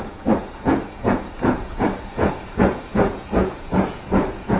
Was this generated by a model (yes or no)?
yes